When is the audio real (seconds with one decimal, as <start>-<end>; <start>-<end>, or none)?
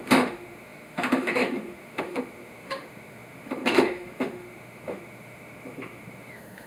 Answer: none